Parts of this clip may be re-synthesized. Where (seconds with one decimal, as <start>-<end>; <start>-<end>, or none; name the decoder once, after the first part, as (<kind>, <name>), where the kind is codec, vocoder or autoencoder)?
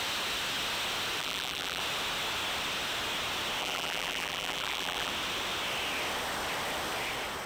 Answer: 1.2-1.8 (vocoder, BigVGAN v2); 3.6-5.1